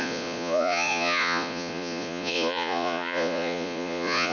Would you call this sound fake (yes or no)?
yes